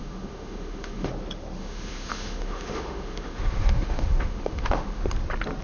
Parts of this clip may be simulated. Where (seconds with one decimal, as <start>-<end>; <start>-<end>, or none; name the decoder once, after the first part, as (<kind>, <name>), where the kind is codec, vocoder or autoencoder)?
0.0-1.1 (autoencoder, DAC-VAE); 1.6-5.0